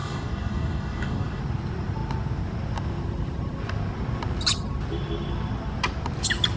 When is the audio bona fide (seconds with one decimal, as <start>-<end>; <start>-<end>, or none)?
1.4-6.6